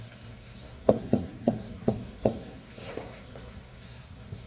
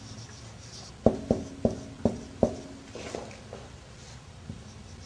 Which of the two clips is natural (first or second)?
second